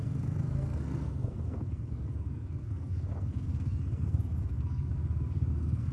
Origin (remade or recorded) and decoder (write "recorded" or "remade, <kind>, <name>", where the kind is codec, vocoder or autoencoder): remade, codec, SNAC